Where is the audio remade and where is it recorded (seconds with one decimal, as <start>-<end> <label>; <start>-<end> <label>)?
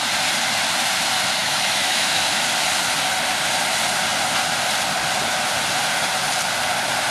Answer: 0.0-1.4 recorded; 1.4-2.4 remade; 2.4-7.1 recorded